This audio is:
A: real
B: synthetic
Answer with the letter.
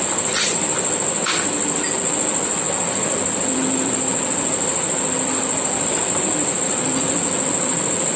A